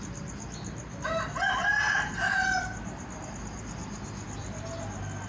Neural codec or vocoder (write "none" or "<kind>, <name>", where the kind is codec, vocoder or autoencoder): none